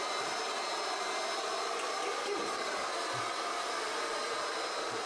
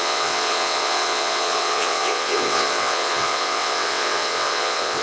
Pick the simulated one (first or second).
second